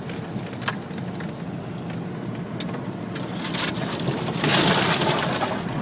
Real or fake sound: real